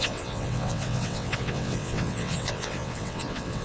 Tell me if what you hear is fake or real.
fake